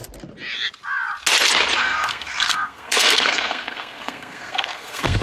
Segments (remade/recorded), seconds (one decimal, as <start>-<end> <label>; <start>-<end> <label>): 0.0-1.8 recorded; 1.8-5.2 remade